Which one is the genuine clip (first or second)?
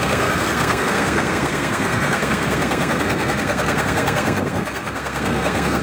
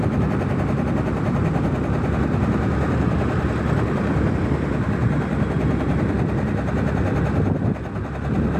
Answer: second